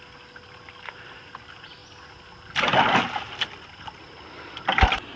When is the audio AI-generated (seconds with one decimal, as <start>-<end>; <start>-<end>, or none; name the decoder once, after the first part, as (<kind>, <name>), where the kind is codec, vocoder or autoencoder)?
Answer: none